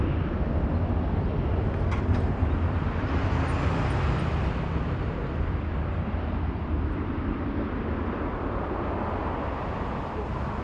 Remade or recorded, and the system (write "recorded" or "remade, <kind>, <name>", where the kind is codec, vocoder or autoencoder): recorded